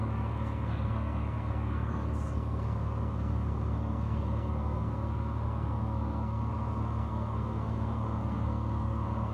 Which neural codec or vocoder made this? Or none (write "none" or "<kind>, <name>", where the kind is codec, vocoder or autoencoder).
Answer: codec, SNAC